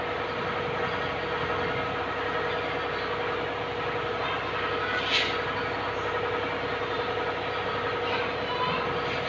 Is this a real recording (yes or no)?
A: yes